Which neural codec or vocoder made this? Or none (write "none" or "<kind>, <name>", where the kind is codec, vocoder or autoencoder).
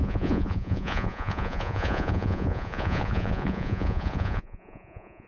vocoder, Vocos